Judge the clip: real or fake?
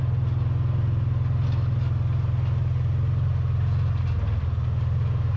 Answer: real